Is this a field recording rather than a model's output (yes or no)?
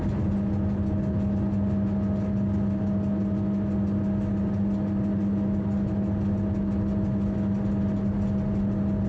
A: yes